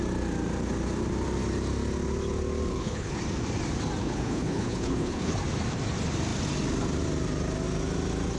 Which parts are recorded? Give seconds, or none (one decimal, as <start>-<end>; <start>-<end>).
0.0-2.7; 3.2-4.0; 5.4-8.4